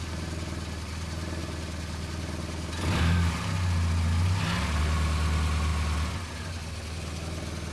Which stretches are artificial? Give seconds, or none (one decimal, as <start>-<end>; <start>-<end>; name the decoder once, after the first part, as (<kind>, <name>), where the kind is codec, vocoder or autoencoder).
none